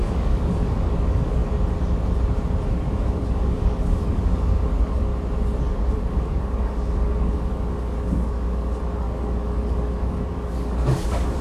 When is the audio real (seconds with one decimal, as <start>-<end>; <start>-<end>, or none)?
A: 1.4-2.7; 5.1-5.8